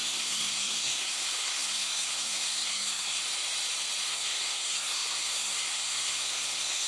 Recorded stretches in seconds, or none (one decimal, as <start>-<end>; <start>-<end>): 3.2-4.0